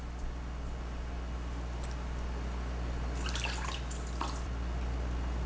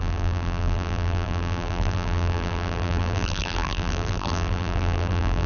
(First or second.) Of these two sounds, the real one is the first